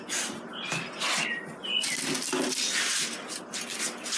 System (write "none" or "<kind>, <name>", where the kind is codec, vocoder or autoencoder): none